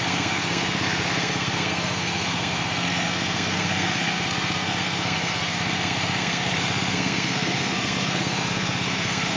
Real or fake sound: fake